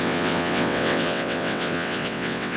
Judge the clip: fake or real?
fake